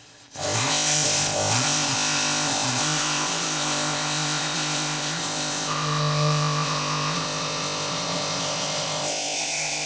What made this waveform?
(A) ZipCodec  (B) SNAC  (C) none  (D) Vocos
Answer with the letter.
A